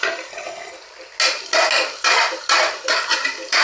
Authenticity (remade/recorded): recorded